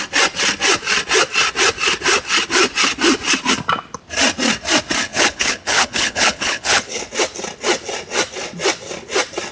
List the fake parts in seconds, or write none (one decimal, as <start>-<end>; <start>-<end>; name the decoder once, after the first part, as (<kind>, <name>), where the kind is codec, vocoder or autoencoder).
5.1-7.0 (codec, HILCodec)